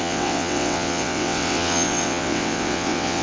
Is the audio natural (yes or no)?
no